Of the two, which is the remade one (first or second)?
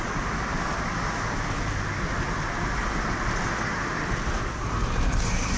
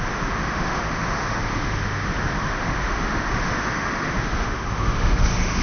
second